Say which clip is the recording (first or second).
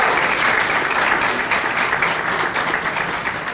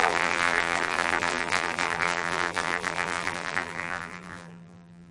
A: first